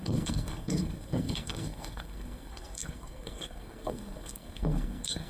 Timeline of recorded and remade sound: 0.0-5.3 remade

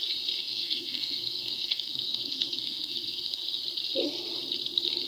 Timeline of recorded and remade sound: 0.0-0.4 recorded; 0.4-3.5 remade; 3.5-5.1 recorded